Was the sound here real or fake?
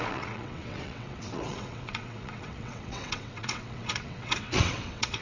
fake